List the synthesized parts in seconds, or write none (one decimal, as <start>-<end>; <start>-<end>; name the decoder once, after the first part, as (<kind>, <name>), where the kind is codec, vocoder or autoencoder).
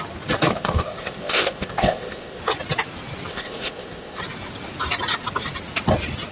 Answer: 0.5-2.4 (codec, ZipCodec); 3.3-4.2